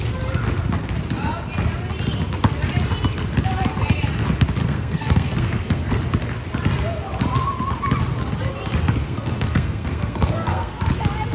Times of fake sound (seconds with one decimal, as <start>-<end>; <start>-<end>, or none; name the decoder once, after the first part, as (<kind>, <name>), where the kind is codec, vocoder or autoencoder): 4.6-5.9 (codec, SNAC); 9.0-10.9